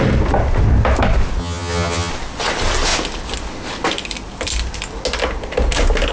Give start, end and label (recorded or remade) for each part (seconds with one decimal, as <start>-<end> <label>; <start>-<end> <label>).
0.0-1.4 recorded; 1.4-2.1 remade; 2.1-6.1 recorded